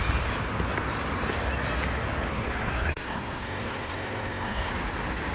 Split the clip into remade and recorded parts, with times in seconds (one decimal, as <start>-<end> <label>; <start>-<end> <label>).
0.0-2.3 recorded; 2.3-4.7 remade; 4.7-5.3 recorded